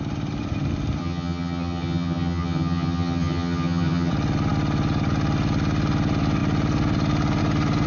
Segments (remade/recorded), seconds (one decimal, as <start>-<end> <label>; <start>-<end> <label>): 0.0-1.0 recorded; 1.0-4.1 remade; 4.1-7.9 recorded